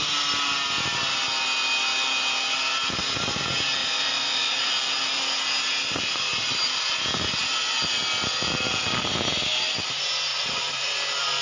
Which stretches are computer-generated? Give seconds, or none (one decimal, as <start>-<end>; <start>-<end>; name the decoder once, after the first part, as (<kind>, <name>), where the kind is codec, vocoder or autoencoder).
3.8-4.7 (vocoder, Vocos); 10.3-10.9